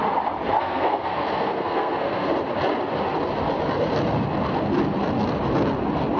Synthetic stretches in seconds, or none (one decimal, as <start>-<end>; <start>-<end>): 0.6-2.3